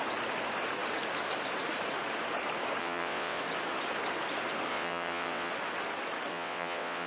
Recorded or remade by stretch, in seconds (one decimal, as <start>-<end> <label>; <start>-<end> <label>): 0.0-2.8 recorded; 2.8-3.4 remade; 3.4-4.7 recorded; 4.7-5.5 remade; 5.5-6.3 recorded; 6.3-7.1 remade